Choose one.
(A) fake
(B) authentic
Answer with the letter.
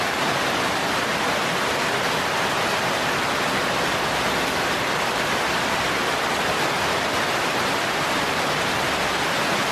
B